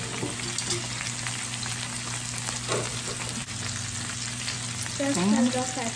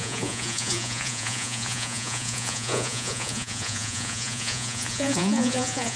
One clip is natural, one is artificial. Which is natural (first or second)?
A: first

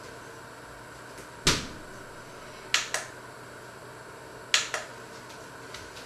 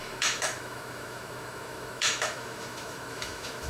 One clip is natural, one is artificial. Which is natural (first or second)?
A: first